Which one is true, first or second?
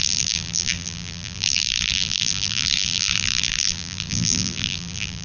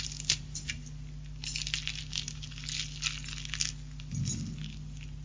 second